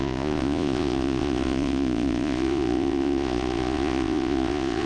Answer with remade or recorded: remade